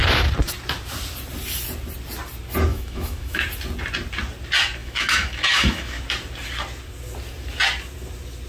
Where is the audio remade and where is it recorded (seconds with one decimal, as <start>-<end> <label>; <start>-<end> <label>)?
0.0-2.7 recorded; 2.7-3.4 remade; 3.4-4.8 recorded; 4.8-6.0 remade; 6.0-8.5 recorded